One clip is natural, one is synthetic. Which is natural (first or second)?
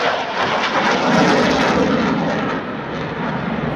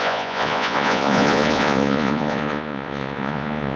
first